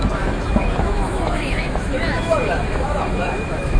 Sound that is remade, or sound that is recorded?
remade